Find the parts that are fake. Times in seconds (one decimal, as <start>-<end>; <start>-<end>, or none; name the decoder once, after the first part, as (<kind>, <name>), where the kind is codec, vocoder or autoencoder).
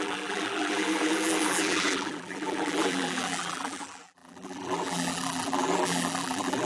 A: 0.0-6.7 (vocoder, BigVGAN v2)